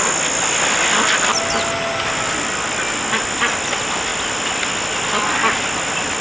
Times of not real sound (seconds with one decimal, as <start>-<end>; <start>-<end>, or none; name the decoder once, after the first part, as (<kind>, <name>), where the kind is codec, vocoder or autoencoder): none